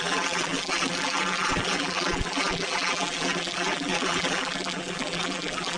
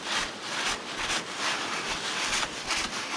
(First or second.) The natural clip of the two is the second